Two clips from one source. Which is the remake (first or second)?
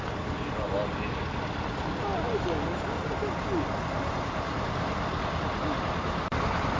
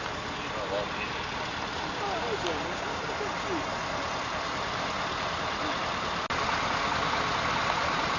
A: first